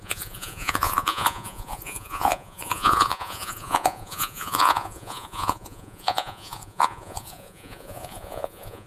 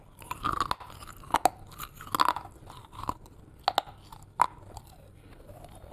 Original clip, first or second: second